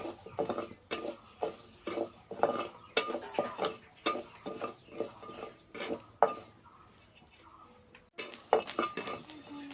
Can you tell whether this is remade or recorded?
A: recorded